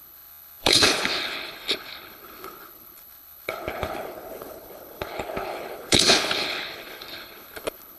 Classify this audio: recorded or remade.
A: remade